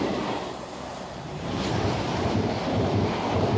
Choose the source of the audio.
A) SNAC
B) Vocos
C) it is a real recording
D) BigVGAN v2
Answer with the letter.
D